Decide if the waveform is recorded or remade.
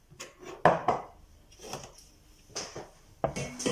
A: recorded